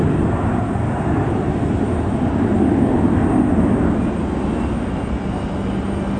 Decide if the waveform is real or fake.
real